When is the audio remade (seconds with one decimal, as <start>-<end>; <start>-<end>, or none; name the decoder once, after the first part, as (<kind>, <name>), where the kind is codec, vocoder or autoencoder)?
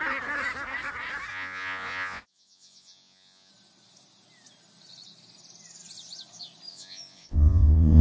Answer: 1.3-3.5 (vocoder, Vocos); 6.7-8.0